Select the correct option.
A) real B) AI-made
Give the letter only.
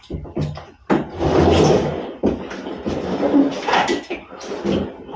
A